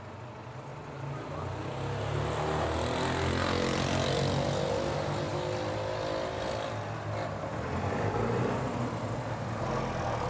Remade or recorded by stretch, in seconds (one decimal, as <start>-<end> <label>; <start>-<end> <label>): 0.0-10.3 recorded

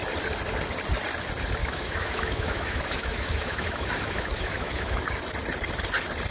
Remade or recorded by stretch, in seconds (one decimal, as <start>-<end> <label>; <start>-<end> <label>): 0.0-1.6 recorded; 1.6-5.0 remade; 5.0-6.3 recorded

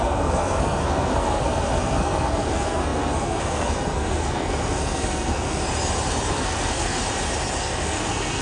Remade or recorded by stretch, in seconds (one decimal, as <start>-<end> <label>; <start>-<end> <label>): 0.0-5.6 remade; 5.6-6.3 recorded; 6.3-7.0 remade; 7.0-7.6 recorded; 7.6-8.4 remade